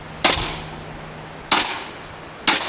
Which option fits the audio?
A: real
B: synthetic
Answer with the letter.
A